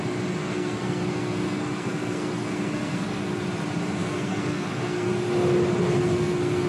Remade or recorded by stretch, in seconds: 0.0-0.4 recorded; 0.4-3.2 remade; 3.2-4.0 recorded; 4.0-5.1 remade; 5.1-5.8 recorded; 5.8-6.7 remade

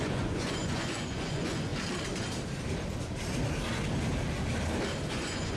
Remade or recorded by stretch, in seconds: 0.0-1.7 remade; 1.7-5.1 recorded; 5.1-5.6 remade

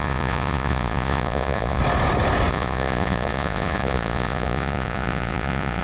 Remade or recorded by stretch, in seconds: 0.0-1.8 remade; 1.8-2.5 recorded; 2.5-5.8 remade

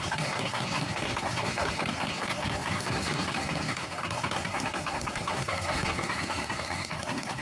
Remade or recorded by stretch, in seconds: 0.0-7.4 remade

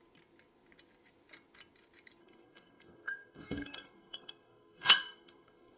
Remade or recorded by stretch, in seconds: 0.0-2.2 recorded; 2.2-5.8 remade

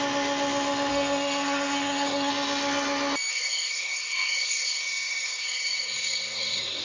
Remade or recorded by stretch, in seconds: 0.0-0.9 recorded; 0.9-2.3 remade; 2.3-3.3 recorded; 3.3-6.8 remade